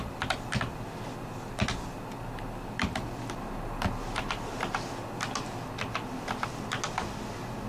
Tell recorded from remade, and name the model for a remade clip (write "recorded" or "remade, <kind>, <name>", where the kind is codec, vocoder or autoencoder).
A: recorded